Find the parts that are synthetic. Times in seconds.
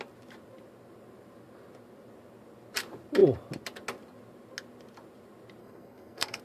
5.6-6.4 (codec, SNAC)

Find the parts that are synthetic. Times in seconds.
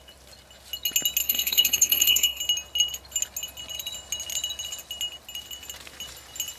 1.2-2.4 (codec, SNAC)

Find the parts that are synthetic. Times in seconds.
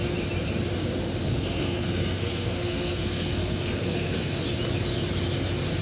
1.2-4.4 (codec, SNAC)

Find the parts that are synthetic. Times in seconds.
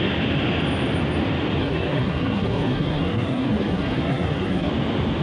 1.6-4.7 (codec, SNAC)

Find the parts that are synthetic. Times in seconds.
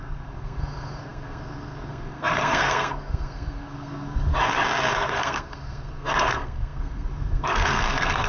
0.0-4.3 (codec, SNAC); 4.9-8.3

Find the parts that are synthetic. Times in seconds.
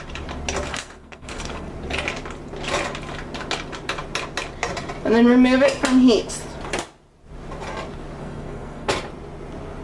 0.7-1.7 (codec, SNAC); 8.2-8.9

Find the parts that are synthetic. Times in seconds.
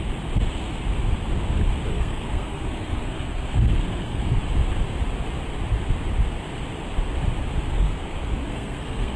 1.9-4.4 (codec, SNAC); 7.7-9.2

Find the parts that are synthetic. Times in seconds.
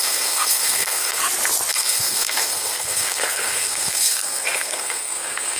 0.0-1.2 (codec, SNAC); 1.7-5.6